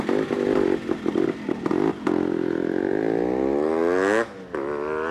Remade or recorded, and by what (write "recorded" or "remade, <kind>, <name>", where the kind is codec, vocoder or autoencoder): recorded